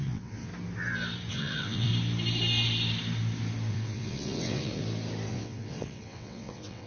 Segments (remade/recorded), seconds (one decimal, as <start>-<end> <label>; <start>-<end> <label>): 0.0-0.5 remade; 0.5-1.3 recorded; 1.3-1.9 remade; 1.9-3.7 recorded; 3.7-4.8 remade; 4.8-5.3 recorded; 5.3-6.9 remade